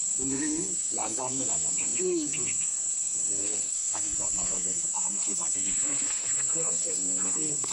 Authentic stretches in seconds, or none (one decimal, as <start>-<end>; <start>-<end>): none